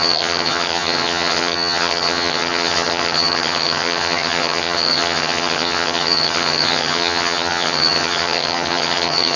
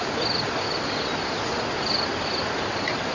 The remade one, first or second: first